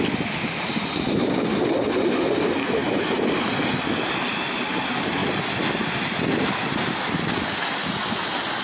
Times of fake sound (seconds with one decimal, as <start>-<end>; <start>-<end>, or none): none